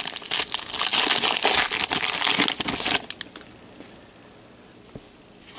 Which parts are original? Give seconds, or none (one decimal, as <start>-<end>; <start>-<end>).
0.0-5.6